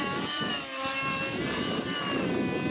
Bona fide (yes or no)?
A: yes